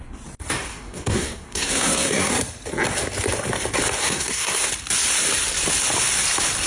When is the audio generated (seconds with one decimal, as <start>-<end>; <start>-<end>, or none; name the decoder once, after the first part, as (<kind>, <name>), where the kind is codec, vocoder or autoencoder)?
0.7-2.3 (codec, SNAC); 4.0-4.7